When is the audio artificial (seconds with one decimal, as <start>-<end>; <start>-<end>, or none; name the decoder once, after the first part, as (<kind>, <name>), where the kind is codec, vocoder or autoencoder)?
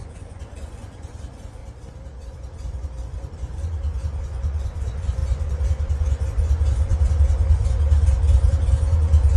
0.0-1.6 (vocoder, Vocos); 2.3-9.4